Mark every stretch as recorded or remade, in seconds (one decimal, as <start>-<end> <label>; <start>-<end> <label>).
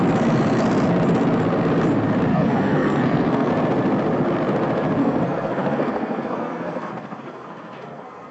0.0-2.3 recorded; 2.3-3.5 remade; 3.5-5.0 recorded; 5.0-8.3 remade